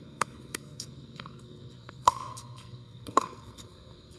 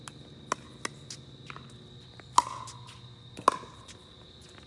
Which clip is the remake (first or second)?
first